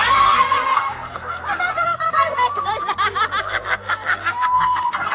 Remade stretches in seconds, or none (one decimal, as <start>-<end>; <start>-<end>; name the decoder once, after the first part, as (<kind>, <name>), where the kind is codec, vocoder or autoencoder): 0.0-2.7 (codec, SNAC); 3.4-5.1